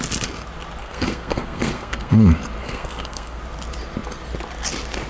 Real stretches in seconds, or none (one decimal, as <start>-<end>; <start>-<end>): 0.0-0.8; 2.1-2.6; 3.4-5.1